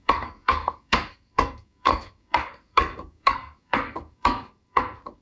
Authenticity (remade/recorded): remade